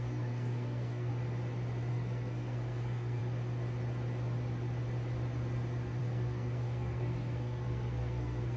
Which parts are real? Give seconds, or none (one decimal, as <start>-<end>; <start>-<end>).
1.1-1.9; 3.2-6.0